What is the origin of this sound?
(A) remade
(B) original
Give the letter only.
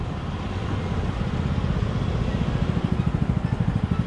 B